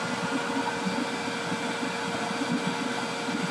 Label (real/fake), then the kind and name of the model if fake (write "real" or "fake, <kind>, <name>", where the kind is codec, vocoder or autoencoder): real